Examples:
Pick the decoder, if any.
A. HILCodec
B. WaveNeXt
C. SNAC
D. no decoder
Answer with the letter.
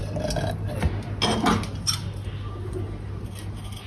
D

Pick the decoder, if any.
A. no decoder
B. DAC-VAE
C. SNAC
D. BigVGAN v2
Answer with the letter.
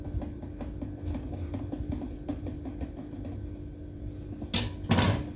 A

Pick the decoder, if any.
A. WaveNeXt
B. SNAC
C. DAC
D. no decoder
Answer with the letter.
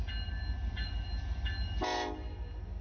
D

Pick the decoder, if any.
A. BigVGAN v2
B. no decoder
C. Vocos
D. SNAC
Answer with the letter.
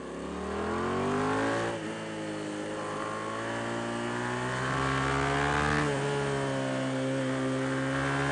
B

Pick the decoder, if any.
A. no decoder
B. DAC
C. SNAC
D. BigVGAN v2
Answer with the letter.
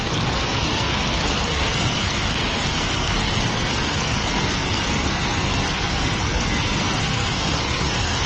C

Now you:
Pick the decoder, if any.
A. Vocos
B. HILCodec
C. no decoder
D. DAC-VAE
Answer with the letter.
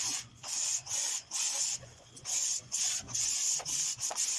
A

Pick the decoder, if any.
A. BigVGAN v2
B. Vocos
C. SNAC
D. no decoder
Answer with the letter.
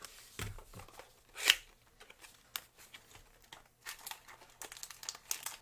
D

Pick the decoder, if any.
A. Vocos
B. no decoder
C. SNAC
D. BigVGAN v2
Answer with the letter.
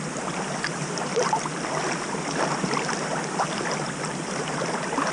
B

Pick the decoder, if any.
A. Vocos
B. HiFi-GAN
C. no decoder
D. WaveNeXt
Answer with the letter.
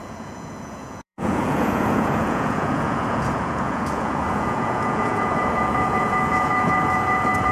A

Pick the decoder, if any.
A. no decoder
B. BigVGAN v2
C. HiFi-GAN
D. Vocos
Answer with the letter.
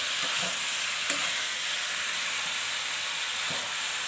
A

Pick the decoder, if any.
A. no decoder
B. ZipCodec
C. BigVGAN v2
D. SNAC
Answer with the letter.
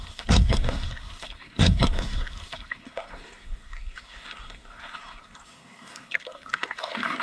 D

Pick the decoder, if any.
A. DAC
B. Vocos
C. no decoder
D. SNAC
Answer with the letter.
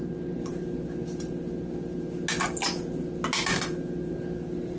C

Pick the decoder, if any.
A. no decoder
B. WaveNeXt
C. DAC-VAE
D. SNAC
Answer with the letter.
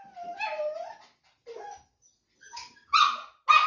A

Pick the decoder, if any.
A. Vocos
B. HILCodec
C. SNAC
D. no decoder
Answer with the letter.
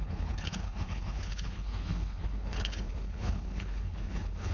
B